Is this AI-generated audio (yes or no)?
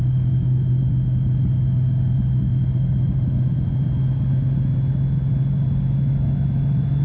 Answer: no